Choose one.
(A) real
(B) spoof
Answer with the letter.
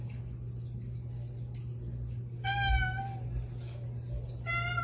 A